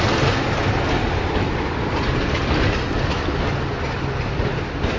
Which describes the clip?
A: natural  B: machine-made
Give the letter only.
A